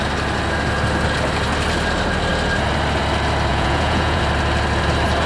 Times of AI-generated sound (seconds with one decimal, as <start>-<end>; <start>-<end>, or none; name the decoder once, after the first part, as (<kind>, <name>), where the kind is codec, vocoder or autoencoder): 3.5-4.2 (vocoder, Vocos)